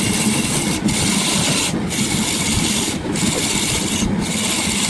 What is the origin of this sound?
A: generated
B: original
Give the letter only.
B